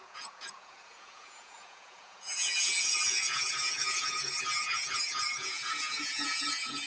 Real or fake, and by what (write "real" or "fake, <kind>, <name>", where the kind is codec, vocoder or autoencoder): fake, vocoder, Vocos